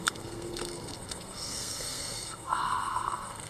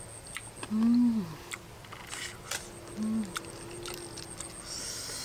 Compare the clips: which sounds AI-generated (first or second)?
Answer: first